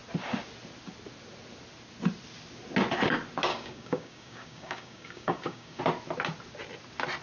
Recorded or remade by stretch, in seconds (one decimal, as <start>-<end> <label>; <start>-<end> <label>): 0.0-3.5 recorded; 3.5-5.8 remade; 5.8-7.2 recorded